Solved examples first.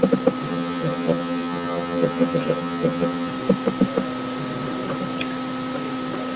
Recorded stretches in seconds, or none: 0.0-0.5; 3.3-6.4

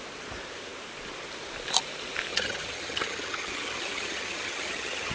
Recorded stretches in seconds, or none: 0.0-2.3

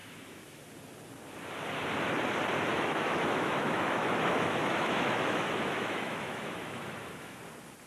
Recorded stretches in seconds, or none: 0.6-2.7; 7.4-7.9